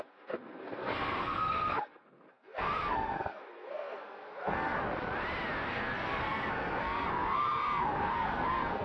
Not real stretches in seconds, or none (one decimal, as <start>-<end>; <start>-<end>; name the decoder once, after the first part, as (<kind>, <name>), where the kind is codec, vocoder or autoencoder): 0.0-4.8 (codec, SNAC); 5.7-8.8